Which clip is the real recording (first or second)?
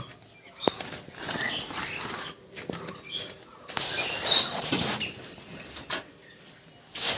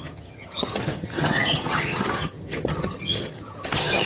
first